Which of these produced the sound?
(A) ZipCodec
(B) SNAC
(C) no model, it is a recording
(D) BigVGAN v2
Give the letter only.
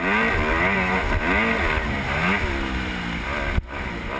C